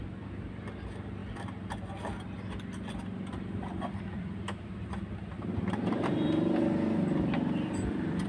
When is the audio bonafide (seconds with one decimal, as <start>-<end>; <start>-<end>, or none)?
none

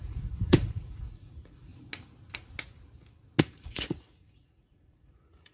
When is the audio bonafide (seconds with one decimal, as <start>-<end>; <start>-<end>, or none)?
1.7-3.4

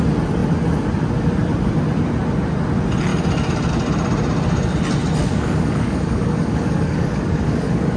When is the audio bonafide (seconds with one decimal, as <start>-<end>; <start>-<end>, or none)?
0.0-5.2

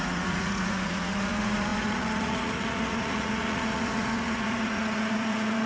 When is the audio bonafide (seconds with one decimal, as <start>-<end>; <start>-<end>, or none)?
none

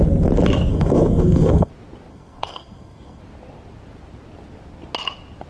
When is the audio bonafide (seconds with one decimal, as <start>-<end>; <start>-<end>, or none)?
0.0-0.7; 1.7-2.1; 3.2-5.5

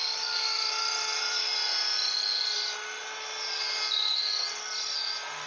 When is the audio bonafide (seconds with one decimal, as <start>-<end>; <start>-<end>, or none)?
0.0-5.5